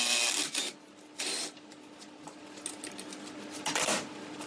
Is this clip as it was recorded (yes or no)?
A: yes